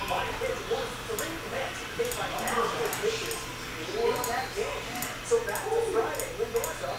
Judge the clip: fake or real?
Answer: real